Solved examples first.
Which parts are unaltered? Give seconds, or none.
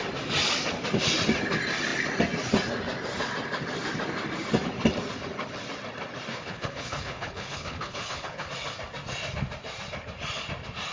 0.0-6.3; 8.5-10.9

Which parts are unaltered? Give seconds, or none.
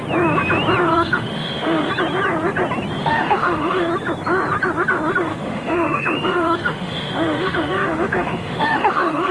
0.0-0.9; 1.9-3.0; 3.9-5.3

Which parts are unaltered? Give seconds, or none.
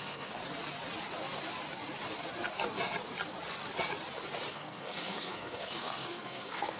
0.4-4.5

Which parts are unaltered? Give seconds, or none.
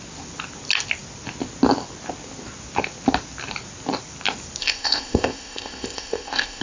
0.0-4.6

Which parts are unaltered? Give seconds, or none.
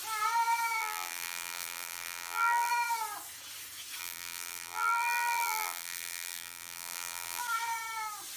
0.0-0.8; 2.7-4.0; 7.4-8.4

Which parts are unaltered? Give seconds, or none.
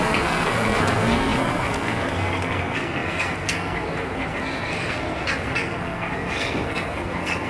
none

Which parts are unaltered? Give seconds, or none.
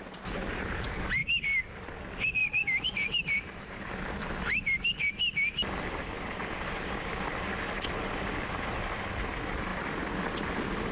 0.0-10.9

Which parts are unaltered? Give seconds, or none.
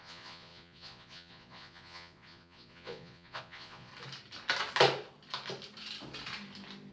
3.9-6.9